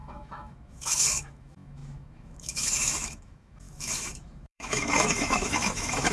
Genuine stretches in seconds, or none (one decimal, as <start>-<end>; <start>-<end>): none